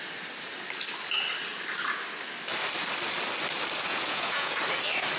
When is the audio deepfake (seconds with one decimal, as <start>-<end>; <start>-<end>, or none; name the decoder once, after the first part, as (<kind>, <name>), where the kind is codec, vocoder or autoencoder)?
3.9-4.6 (vocoder, Vocos)